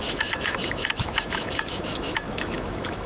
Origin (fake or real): fake